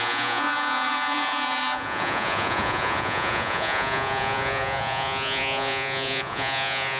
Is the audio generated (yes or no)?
yes